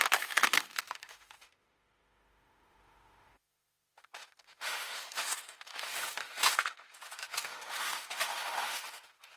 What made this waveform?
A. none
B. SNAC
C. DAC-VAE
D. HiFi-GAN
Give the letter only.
C